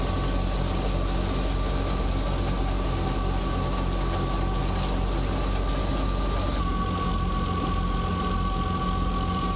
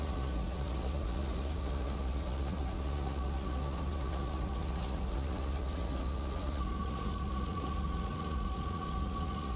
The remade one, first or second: second